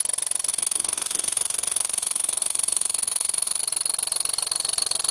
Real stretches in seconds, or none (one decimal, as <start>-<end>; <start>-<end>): 0.0-0.5; 3.6-5.1